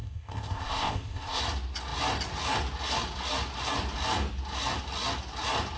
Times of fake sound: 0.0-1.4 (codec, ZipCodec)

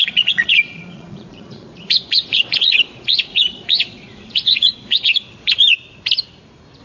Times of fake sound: 0.0-5.6 (vocoder, Vocos)

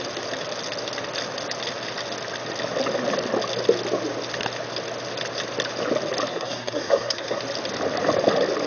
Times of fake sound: 6.3-7.4 (codec, SNAC)

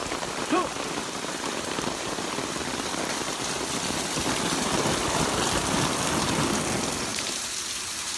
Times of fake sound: 0.0-2.3 (vocoder, BigVGAN v2); 7.1-8.2